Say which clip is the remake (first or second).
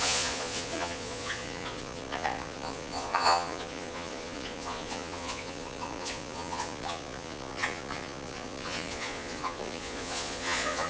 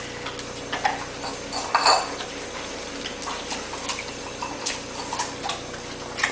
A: first